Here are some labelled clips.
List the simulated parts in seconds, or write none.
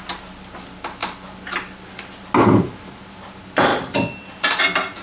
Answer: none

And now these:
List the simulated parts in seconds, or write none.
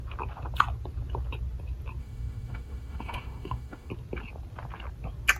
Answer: 2.0-3.9 (autoencoder, DAC-VAE)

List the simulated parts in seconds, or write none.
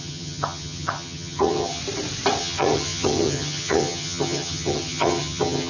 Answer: 0.0-1.8 (vocoder, HiFi-GAN); 2.4-5.7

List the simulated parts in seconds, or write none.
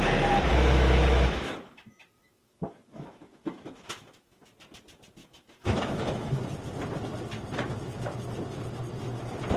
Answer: 0.5-4.4 (autoencoder, DAC-VAE); 5.2-6.4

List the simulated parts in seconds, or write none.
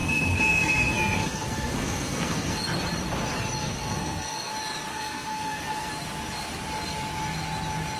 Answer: 0.0-2.6 (codec, SNAC); 3.6-4.5; 4.9-5.9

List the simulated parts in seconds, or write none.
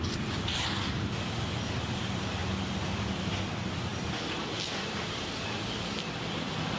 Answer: none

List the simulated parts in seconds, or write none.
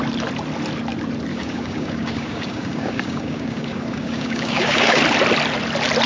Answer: 1.3-5.0 (codec, DAC)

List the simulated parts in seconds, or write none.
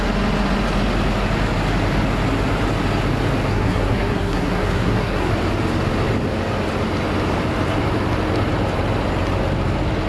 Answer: 3.5-5.3 (codec, SNAC)